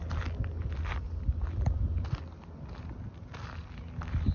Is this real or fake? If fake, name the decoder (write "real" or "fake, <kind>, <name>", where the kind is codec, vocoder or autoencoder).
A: real